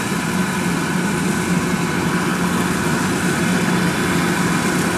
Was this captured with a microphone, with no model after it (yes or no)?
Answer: yes